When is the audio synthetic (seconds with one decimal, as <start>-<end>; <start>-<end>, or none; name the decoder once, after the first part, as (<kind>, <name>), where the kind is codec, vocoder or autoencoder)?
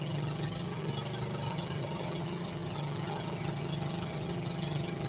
0.0-0.9 (vocoder, HiFi-GAN); 1.5-5.1